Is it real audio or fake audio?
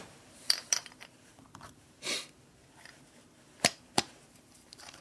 fake